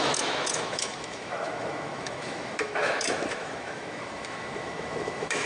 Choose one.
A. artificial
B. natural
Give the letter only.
A